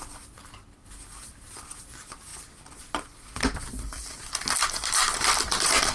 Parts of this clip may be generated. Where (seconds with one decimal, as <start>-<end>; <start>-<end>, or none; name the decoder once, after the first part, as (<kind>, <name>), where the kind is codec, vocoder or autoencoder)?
none